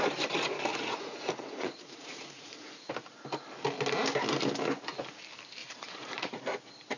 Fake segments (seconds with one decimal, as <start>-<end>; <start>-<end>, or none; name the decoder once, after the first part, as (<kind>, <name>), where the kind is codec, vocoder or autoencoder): 0.7-2.9 (vocoder, Vocos); 5.6-6.4